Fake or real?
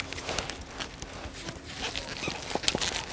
real